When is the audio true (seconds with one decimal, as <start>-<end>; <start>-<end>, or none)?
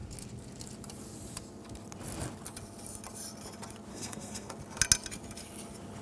0.0-3.9; 4.5-6.0